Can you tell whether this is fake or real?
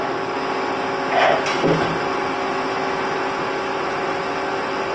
real